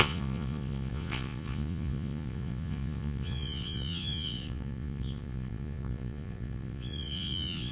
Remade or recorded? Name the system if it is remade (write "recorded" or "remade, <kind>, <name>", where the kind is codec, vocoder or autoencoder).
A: remade, vocoder, Vocos